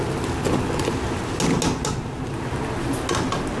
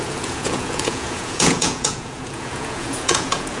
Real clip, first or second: first